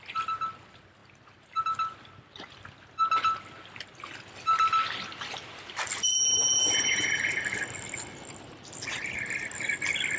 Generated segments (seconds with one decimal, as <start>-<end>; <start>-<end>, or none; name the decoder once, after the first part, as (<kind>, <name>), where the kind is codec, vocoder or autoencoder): none